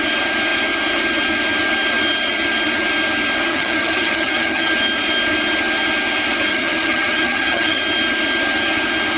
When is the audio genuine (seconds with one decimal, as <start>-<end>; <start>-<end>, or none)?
0.0-3.5; 4.7-6.5; 7.8-9.2